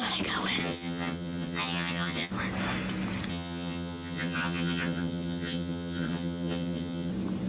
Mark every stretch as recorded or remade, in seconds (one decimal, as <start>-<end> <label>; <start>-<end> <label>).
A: 0.0-0.6 recorded; 0.6-2.3 remade; 2.3-3.3 recorded; 3.3-7.1 remade; 7.1-7.5 recorded